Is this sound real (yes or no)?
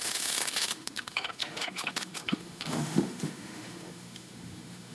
no